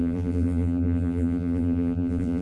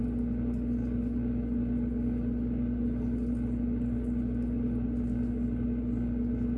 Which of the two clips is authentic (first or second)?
second